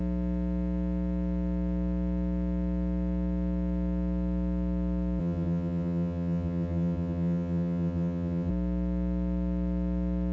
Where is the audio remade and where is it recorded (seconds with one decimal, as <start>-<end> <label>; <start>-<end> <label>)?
0.0-5.2 recorded; 5.2-8.5 remade; 8.5-10.3 recorded